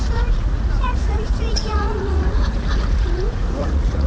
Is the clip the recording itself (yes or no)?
no